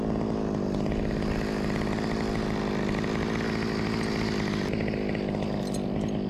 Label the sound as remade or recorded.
recorded